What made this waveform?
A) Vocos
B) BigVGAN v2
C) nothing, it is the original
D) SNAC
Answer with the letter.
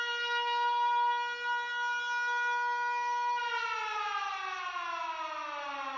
C